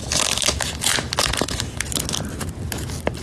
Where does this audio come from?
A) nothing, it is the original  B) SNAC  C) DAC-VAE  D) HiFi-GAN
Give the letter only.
A